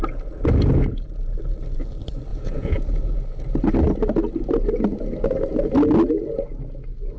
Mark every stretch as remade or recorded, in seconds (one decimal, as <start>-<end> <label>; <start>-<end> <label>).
0.0-2.3 recorded; 2.3-3.2 remade; 3.2-7.2 recorded